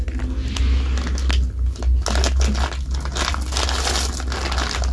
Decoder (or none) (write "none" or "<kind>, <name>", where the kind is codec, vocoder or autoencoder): none